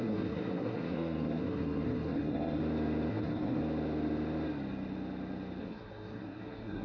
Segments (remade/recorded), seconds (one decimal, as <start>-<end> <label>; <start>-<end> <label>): 0.0-2.6 remade; 2.6-3.1 recorded; 3.1-3.6 remade; 3.6-5.6 recorded; 5.6-6.8 remade